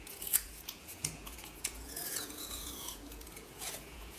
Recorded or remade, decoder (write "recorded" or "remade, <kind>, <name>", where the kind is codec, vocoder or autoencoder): remade, vocoder, Vocos